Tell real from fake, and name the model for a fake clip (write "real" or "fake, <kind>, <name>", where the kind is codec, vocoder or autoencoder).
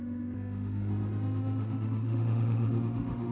fake, autoencoder, DAC-VAE